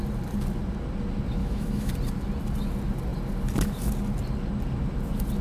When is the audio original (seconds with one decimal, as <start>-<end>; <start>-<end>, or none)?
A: 0.0-1.4; 1.9-5.4